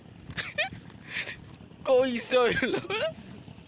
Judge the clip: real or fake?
real